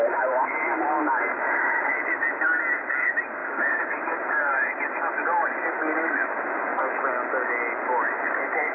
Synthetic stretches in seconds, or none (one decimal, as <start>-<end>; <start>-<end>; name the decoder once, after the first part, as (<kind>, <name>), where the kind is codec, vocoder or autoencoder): 0.0-6.7 (vocoder, BigVGAN v2); 7.8-8.7